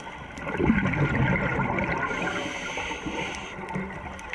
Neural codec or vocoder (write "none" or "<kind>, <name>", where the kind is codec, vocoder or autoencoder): none